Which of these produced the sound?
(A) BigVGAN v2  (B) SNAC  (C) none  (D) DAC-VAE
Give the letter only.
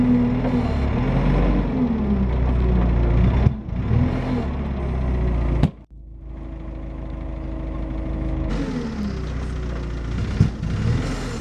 C